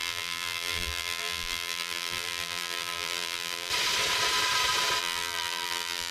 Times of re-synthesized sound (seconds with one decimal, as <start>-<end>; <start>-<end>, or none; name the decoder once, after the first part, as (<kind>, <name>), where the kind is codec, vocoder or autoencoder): 0.0-3.7 (vocoder, BigVGAN v2); 5.0-6.1